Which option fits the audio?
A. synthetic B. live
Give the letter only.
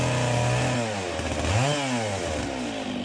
B